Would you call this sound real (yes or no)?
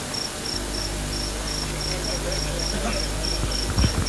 yes